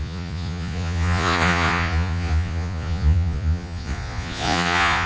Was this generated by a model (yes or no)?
yes